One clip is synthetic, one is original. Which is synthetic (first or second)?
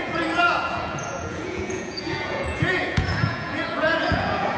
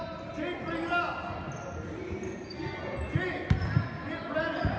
first